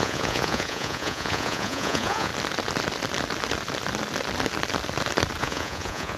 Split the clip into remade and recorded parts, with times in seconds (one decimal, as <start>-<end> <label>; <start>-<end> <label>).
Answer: 0.0-2.3 remade; 2.3-5.4 recorded; 5.4-6.2 remade